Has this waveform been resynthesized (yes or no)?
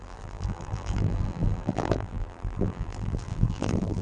yes